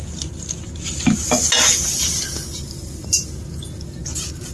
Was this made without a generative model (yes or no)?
yes